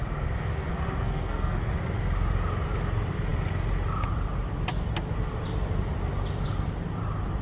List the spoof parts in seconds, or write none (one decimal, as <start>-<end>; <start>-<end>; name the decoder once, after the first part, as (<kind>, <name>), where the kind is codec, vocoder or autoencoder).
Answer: 0.7-1.7 (codec, SNAC)